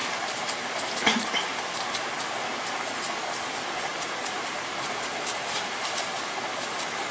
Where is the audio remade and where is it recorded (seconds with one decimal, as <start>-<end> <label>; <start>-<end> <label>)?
0.0-1.6 remade; 1.6-3.9 recorded; 3.9-7.1 remade